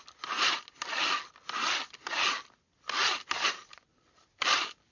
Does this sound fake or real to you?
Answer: real